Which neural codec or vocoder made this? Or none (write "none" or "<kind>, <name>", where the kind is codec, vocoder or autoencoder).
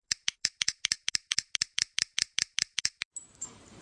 vocoder, BigVGAN v2